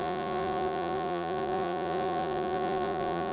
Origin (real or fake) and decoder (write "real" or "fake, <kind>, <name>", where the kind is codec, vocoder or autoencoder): fake, vocoder, Vocos